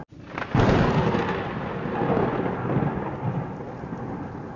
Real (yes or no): yes